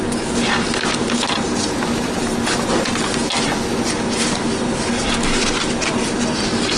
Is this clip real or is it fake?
real